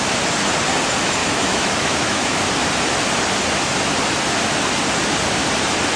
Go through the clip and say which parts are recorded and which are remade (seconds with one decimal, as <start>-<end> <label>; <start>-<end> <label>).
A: 0.0-1.2 recorded; 1.2-2.4 remade; 2.4-6.0 recorded